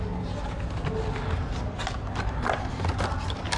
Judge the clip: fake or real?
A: real